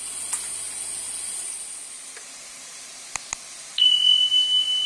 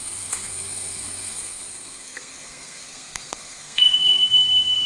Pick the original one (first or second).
first